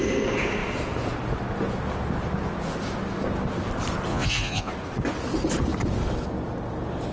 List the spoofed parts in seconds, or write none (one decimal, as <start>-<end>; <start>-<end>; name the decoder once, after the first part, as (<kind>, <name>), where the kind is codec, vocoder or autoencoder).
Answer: 4.1-4.7 (vocoder, Vocos)